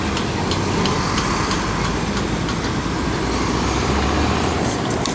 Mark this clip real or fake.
real